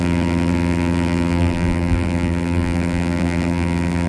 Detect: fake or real fake